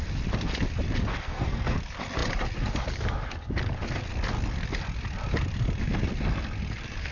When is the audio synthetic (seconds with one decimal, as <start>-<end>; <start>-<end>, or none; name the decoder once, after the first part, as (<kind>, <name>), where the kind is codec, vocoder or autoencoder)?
1.1-1.8 (codec, SNAC)